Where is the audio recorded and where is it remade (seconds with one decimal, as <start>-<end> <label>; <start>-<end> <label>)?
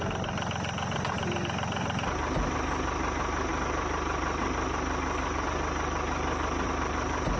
0.0-7.4 recorded